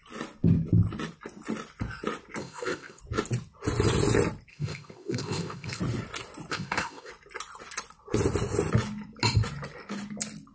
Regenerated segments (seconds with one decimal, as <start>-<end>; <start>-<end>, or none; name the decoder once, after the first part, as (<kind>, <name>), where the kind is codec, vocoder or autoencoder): 2.4-3.0 (codec, ZipCodec); 4.5-5.8; 6.5-7.1